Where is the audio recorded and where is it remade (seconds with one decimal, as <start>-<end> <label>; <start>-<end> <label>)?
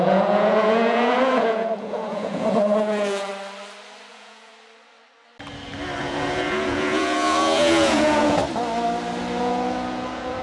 0.0-3.3 remade; 3.3-4.1 recorded; 4.1-4.5 remade; 4.5-6.0 recorded; 6.0-8.4 remade; 8.4-9.4 recorded; 9.4-10.4 remade